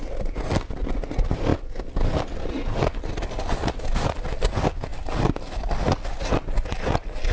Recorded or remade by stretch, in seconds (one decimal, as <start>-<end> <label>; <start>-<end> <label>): 0.0-7.3 recorded